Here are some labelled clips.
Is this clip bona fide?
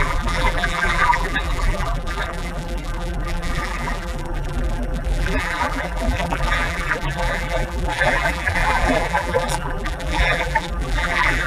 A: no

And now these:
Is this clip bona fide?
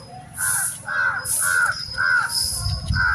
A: yes